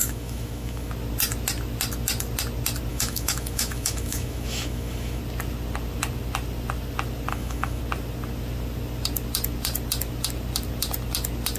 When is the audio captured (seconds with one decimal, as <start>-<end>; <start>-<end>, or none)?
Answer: 0.9-2.9; 5.2-7.3; 7.8-11.6